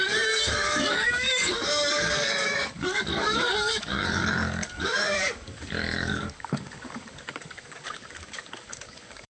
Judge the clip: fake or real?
fake